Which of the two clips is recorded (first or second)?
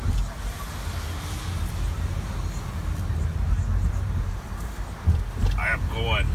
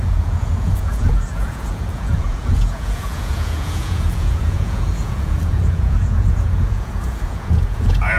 first